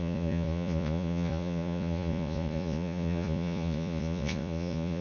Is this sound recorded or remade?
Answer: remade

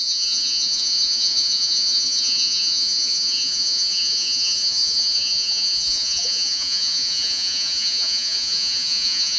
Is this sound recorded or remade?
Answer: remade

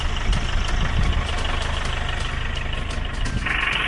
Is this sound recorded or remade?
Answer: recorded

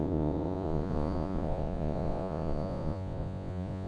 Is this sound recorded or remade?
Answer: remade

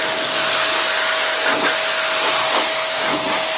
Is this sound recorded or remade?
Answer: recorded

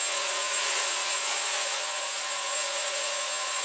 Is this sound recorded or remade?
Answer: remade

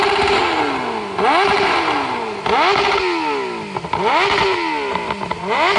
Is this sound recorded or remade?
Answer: recorded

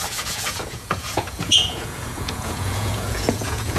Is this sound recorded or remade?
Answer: remade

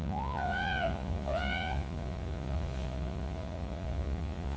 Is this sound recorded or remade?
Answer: remade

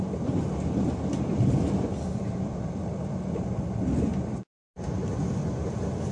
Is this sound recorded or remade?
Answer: recorded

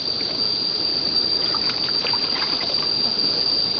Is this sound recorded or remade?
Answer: recorded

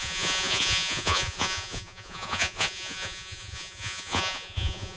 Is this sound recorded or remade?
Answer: remade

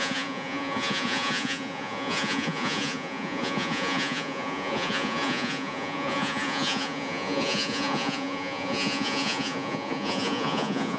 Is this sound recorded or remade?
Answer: remade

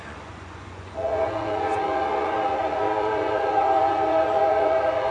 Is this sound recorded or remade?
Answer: remade